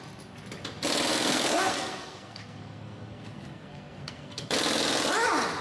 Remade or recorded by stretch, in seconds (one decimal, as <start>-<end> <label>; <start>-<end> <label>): 0.0-1.1 recorded; 1.1-4.5 remade; 4.5-5.6 recorded